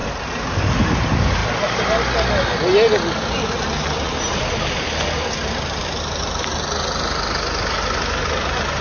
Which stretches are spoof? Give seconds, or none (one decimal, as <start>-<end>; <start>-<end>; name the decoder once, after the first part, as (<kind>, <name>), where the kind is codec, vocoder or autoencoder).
none